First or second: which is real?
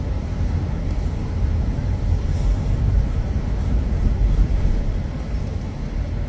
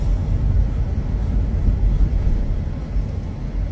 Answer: second